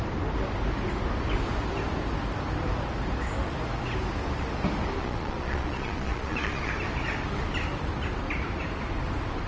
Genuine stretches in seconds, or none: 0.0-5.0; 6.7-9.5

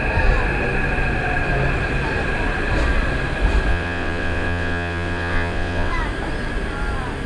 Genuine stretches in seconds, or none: 0.0-3.7; 5.9-7.3

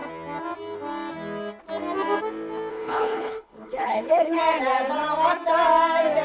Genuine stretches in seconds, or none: 0.0-2.7; 4.4-6.2

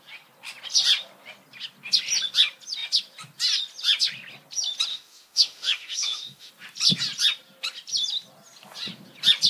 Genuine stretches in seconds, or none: 0.0-4.9; 6.5-9.5

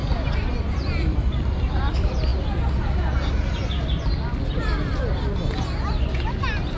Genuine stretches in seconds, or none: 2.3-6.8